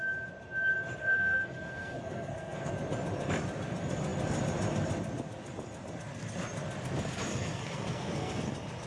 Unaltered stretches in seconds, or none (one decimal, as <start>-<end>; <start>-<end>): 0.0-1.0; 2.7-7.3; 8.4-8.9